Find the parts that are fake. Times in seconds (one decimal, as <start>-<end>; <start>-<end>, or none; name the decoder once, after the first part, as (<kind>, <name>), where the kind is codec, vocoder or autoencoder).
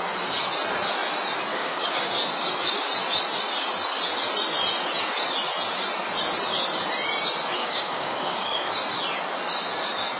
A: 1.5-2.0 (codec, DAC); 7.6-8.7